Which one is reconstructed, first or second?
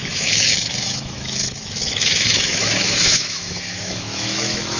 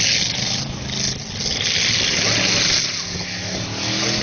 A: first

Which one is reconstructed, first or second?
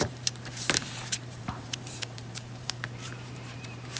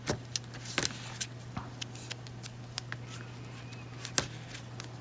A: first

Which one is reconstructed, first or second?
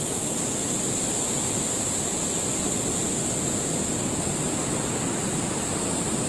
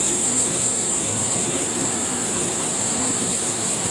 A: second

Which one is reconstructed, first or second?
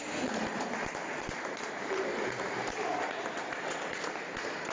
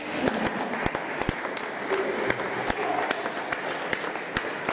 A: first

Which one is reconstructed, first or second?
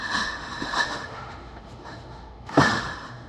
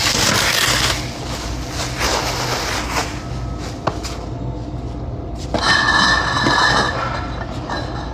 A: first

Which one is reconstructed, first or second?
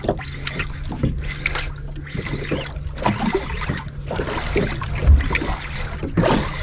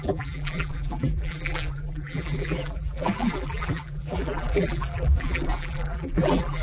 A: second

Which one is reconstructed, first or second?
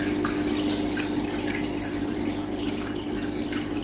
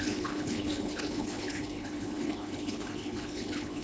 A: second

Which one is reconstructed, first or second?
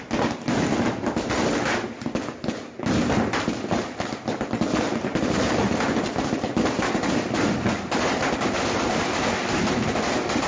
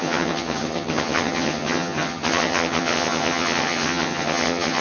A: second